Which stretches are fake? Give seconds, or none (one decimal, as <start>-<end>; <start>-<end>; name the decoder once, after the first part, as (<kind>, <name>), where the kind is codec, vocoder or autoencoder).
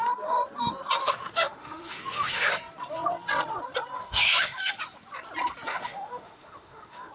1.0-2.5 (autoencoder, DAC-VAE); 4.0-4.8; 5.7-7.1